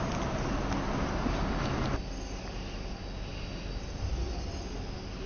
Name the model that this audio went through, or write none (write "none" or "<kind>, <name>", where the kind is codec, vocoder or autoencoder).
none